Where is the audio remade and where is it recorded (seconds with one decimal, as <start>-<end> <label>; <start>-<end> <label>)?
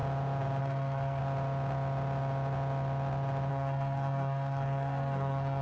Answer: 0.0-0.6 recorded; 0.6-1.2 remade; 1.2-3.5 recorded; 3.5-5.6 remade